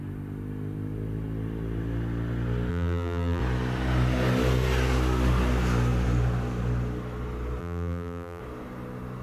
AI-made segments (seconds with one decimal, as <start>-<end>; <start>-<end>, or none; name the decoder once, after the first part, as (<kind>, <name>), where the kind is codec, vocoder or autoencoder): 2.7-3.4 (vocoder, BigVGAN v2); 7.6-8.4

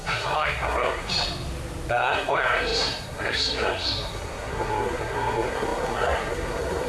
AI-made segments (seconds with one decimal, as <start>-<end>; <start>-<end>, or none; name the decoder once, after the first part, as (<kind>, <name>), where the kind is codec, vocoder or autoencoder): 0.0-1.1 (codec, SNAC); 1.9-6.9

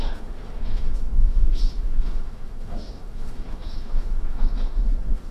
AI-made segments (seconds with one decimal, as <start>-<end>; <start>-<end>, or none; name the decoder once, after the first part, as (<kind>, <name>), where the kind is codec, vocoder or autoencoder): 0.0-5.3 (autoencoder, DAC-VAE)

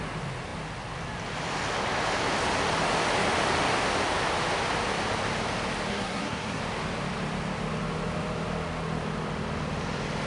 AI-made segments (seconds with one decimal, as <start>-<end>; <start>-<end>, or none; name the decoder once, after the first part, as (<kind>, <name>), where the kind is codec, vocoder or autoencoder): 5.9-6.6 (codec, SNAC)

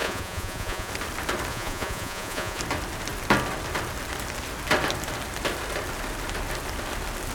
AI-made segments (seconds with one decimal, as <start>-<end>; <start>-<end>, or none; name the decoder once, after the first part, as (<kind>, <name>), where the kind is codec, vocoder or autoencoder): 0.0-0.9 (vocoder, Vocos); 1.5-2.6